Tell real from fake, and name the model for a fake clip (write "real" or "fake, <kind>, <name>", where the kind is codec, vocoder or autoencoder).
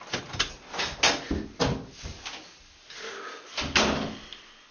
real